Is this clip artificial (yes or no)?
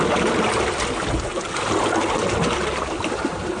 no